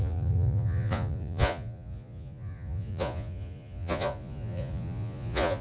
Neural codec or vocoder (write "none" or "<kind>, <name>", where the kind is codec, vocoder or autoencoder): vocoder, Vocos